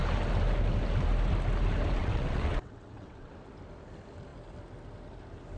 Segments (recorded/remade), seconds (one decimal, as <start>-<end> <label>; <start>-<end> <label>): 0.0-2.0 recorded; 2.0-3.3 remade; 3.3-5.6 recorded